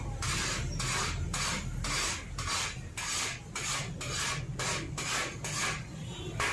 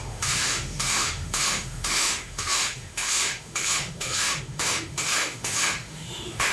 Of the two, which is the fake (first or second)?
second